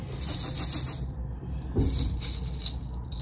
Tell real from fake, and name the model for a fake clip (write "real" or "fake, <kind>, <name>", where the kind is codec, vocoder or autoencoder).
real